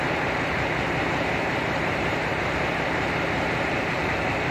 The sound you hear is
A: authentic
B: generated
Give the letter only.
B